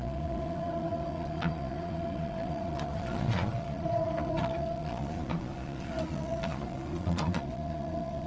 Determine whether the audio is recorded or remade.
remade